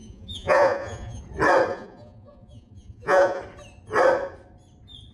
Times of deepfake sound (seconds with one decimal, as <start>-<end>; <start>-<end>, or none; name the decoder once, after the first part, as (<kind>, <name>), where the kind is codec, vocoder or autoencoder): 0.0-1.2 (vocoder, Vocos); 1.7-3.4